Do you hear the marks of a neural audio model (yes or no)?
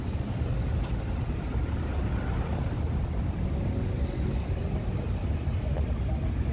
no